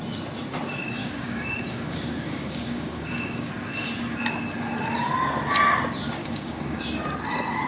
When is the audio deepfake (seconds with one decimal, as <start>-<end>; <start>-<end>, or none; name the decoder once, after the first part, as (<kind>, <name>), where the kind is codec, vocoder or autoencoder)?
1.0-3.5 (codec, DAC); 6.2-6.8